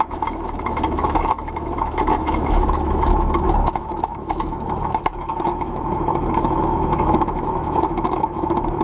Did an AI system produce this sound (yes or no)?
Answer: yes